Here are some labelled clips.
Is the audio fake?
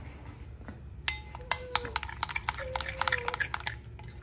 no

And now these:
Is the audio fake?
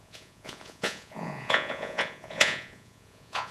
yes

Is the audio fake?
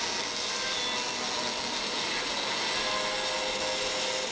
no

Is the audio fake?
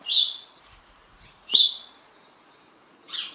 yes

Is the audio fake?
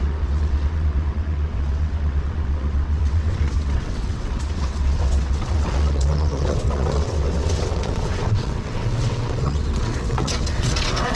yes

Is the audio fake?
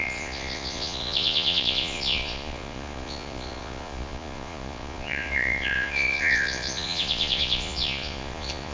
yes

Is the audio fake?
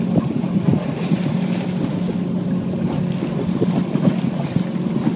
no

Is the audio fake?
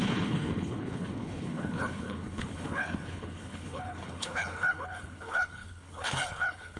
yes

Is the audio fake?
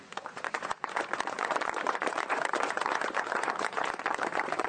yes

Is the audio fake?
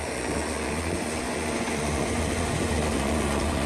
yes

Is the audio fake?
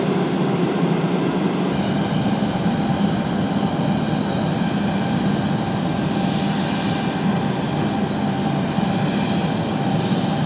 no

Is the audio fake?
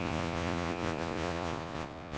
yes